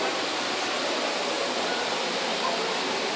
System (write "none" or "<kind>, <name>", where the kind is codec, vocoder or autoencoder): none